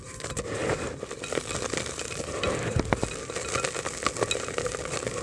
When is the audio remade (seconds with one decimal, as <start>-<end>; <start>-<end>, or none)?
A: none

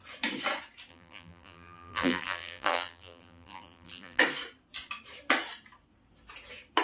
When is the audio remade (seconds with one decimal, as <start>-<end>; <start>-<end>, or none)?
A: 0.9-4.2